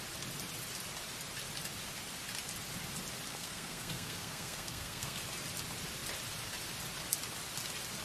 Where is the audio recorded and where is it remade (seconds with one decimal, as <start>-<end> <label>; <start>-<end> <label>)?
0.0-3.3 recorded; 3.3-5.2 remade; 5.2-8.0 recorded

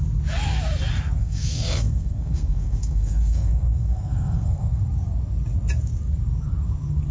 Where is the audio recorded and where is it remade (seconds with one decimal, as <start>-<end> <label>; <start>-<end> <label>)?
0.0-1.2 recorded; 1.2-4.8 remade; 4.8-7.1 recorded

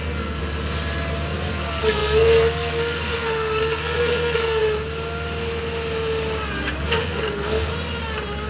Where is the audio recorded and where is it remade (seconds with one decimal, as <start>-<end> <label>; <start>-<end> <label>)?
0.0-0.4 remade; 0.4-1.5 recorded; 1.5-4.6 remade; 4.6-7.0 recorded; 7.0-7.7 remade; 7.7-8.5 recorded